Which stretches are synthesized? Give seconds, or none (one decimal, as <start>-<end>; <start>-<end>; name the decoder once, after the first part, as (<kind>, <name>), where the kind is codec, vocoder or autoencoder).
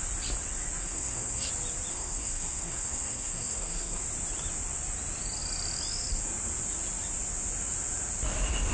0.8-1.5 (codec, SNAC); 1.9-4.0